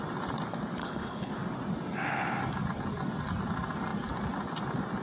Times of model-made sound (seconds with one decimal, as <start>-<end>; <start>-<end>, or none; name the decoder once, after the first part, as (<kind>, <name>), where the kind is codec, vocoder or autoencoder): 0.8-1.3 (codec, HILCodec)